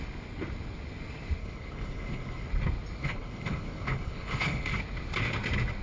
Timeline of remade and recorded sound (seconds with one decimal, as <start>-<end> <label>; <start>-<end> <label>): 0.0-1.4 recorded; 1.4-2.5 remade; 2.5-3.0 recorded; 3.0-4.8 remade; 4.8-5.8 recorded